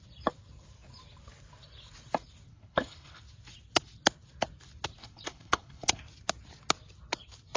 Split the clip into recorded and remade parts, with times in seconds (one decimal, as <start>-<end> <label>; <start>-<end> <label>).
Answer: 0.0-2.5 recorded; 2.5-3.2 remade; 3.2-5.0 recorded; 5.0-6.0 remade; 6.0-7.6 recorded